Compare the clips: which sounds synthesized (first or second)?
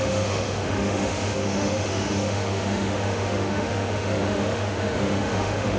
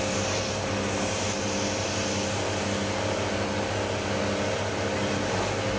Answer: first